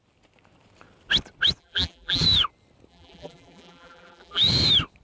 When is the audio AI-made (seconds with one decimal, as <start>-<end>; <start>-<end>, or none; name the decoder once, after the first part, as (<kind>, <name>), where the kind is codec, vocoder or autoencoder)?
1.6-2.2 (vocoder, BigVGAN v2); 2.9-4.4